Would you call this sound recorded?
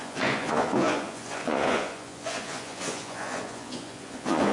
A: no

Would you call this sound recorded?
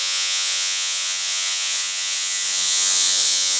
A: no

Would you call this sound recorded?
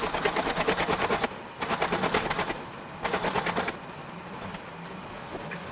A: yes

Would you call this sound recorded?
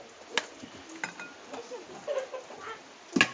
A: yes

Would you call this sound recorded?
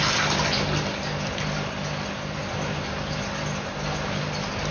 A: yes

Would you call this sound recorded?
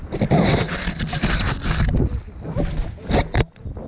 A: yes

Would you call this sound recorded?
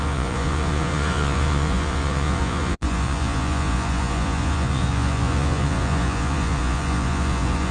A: no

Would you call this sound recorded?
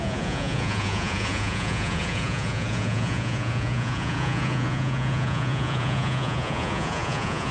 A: no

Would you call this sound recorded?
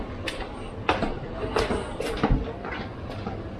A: yes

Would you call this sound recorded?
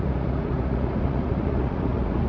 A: no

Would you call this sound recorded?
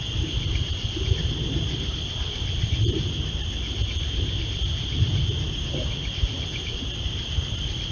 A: yes